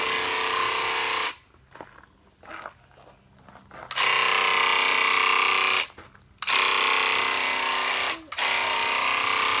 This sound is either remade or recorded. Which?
recorded